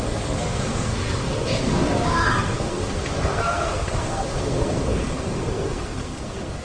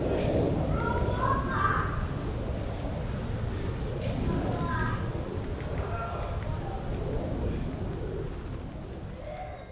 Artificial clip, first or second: first